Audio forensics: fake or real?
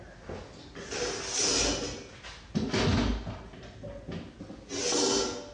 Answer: real